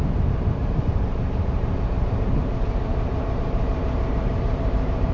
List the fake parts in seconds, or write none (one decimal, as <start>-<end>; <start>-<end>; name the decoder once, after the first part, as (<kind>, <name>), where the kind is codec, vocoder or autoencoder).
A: 0.6-5.1 (vocoder, BigVGAN v2)